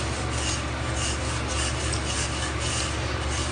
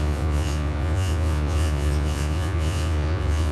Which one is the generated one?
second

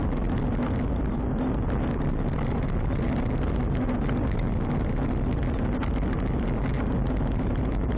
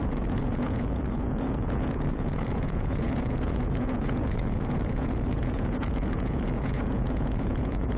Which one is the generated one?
second